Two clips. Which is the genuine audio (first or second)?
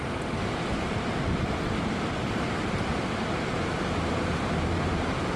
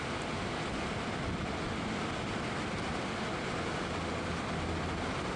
second